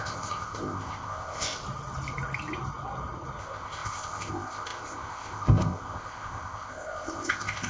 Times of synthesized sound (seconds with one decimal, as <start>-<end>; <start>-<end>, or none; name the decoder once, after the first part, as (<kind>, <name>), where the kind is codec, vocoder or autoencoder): 0.0-1.6 (codec, ZipCodec); 3.4-7.7